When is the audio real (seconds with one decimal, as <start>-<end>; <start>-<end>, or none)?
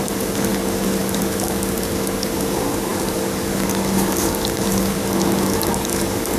none